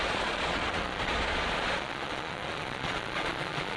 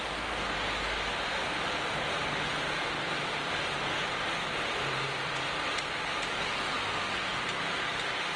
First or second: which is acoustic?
second